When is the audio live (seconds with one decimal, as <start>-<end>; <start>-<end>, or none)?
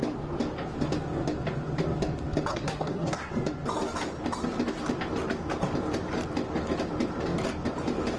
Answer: 0.0-2.5; 3.3-8.2